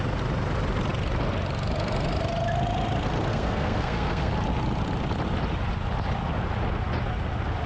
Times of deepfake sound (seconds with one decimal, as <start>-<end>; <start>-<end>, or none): 3.3-4.3